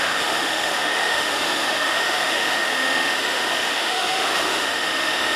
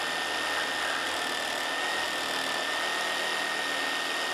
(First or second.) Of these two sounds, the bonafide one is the second